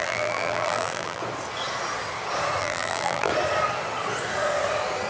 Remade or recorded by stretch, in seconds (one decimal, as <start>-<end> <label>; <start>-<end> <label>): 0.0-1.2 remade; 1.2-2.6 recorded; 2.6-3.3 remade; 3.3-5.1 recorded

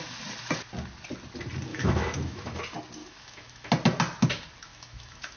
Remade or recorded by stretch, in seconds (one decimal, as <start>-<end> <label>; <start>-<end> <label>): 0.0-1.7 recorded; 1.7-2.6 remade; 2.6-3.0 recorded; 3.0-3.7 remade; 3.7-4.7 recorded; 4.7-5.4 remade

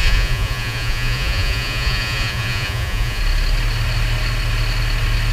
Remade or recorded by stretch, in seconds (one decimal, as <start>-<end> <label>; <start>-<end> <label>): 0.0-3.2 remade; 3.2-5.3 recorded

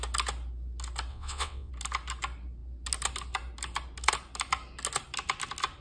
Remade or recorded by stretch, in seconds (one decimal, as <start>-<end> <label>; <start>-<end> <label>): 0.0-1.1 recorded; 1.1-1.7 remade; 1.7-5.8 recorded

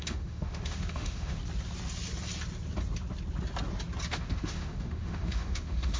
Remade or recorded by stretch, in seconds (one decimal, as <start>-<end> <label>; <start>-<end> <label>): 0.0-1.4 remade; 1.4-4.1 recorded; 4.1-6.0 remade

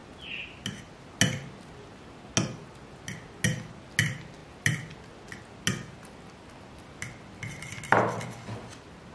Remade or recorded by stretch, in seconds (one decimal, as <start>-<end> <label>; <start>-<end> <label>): 0.0-9.1 recorded